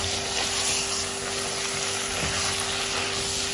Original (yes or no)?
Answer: yes